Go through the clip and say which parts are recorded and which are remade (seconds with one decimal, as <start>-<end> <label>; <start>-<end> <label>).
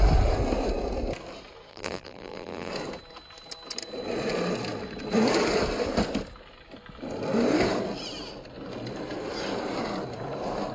0.0-1.7 recorded; 1.7-2.7 remade; 2.7-10.7 recorded